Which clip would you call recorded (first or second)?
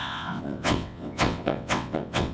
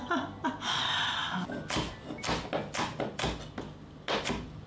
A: second